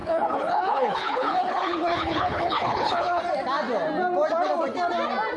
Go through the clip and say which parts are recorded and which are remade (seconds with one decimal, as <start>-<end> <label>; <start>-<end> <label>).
0.0-3.2 remade; 3.2-5.4 recorded